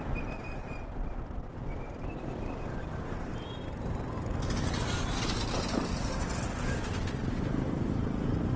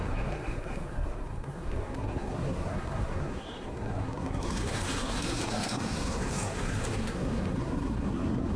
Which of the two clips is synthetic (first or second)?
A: second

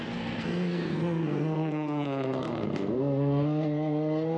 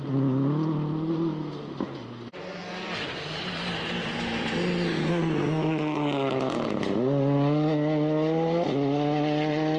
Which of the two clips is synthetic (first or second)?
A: first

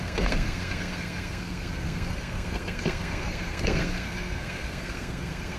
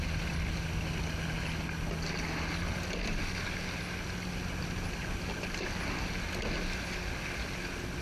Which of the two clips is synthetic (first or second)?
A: first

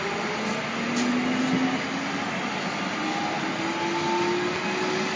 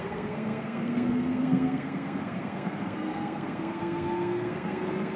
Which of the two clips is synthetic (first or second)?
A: second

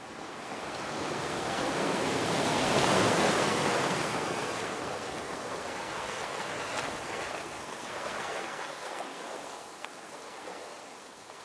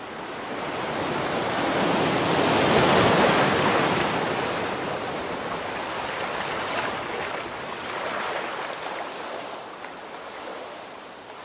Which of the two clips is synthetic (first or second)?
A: first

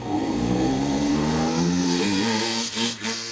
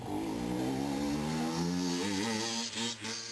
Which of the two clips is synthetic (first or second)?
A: first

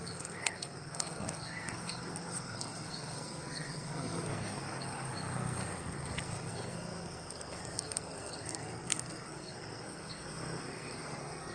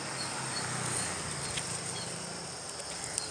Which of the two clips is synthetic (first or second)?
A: first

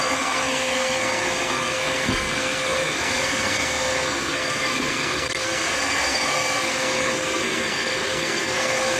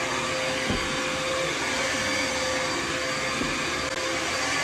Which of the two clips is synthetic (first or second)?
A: first